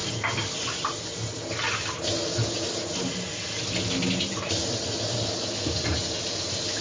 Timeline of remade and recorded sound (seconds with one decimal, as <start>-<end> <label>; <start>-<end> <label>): 0.0-6.8 recorded